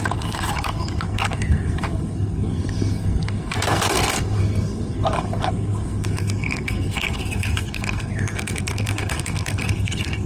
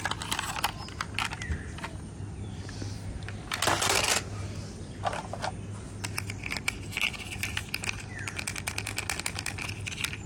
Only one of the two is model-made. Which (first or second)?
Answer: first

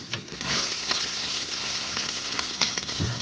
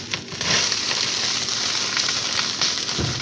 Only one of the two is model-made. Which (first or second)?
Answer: first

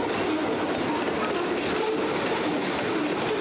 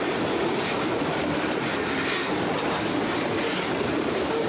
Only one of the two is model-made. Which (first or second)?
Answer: second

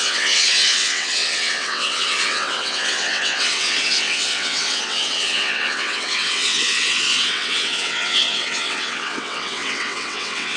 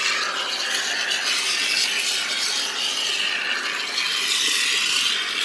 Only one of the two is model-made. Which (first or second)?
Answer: first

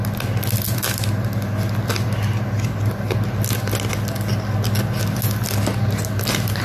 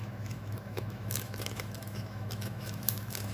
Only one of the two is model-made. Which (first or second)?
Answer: second